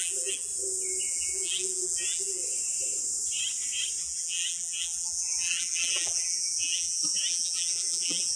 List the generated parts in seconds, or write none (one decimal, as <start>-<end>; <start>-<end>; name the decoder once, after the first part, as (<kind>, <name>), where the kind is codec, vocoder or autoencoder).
0.0-0.5 (vocoder, BigVGAN v2); 1.1-2.4; 4.0-8.4